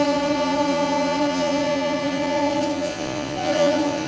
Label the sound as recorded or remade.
remade